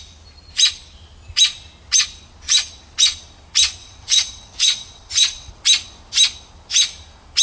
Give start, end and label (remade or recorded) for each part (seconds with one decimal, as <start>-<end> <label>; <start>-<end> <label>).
0.0-3.8 recorded; 3.8-5.5 remade; 5.5-7.4 recorded